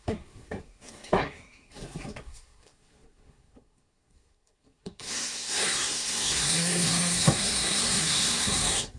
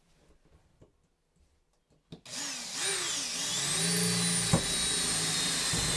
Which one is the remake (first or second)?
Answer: first